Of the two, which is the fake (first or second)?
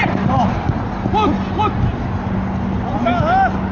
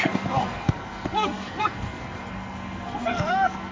second